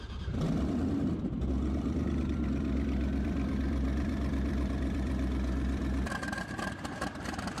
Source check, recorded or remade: remade